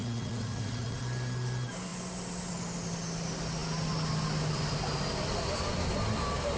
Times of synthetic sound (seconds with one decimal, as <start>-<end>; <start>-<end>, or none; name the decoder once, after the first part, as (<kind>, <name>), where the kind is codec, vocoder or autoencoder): 0.0-1.0 (vocoder, Vocos)